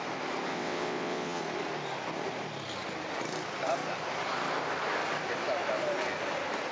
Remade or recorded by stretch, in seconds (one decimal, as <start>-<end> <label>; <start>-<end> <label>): 0.0-0.5 recorded; 0.5-1.4 remade; 1.4-6.7 recorded